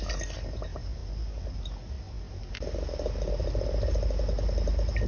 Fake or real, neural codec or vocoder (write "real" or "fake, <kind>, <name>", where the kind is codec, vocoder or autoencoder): real